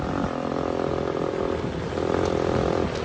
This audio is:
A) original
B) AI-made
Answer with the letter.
A